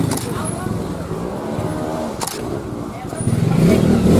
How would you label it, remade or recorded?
recorded